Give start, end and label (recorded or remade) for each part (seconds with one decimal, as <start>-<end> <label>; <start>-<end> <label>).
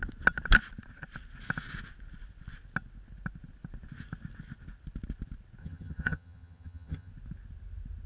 0.0-5.6 recorded; 5.6-7.1 remade; 7.1-8.1 recorded